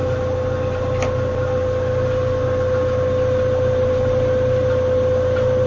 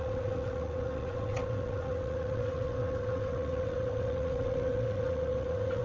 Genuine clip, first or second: first